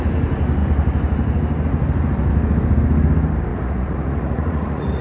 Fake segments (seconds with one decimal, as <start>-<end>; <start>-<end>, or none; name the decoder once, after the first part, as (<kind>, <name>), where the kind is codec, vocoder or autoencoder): 3.5-5.0 (vocoder, Vocos)